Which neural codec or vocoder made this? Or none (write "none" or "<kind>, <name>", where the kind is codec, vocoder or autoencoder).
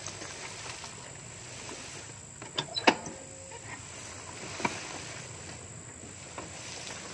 none